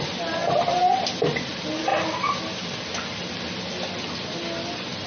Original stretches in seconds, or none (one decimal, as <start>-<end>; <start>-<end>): 0.0-5.1